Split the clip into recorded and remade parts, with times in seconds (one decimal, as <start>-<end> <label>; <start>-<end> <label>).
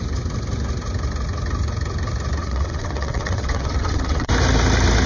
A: 0.0-2.4 recorded; 2.4-4.3 remade; 4.3-5.1 recorded